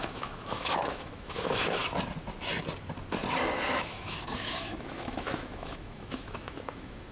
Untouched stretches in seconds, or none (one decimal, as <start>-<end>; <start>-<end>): 1.8-3.7